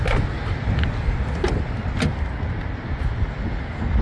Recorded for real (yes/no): yes